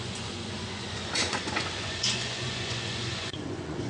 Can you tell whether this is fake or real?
fake